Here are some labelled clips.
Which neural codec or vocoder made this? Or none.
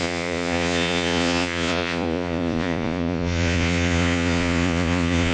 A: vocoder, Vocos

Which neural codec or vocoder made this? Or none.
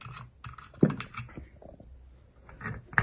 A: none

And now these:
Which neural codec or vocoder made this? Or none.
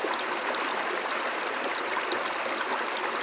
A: none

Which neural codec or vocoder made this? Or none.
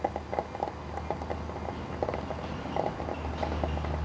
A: none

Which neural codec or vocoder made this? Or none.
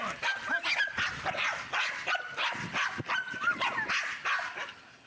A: none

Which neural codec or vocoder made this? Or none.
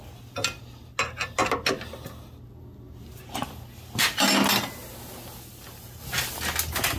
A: none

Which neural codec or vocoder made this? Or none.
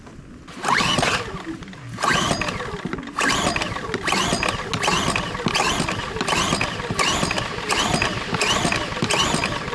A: none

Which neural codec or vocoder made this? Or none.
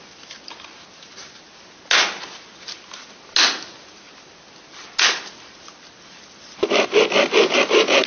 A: none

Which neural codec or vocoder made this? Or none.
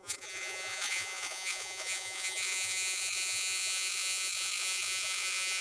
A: vocoder, Vocos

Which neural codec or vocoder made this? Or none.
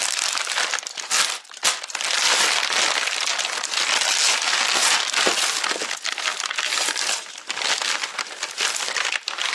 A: none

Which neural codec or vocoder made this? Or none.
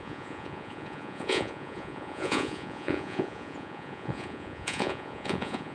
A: vocoder, Vocos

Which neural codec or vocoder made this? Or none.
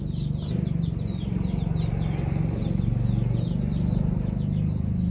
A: none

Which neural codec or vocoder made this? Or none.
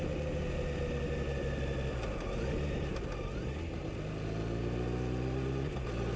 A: none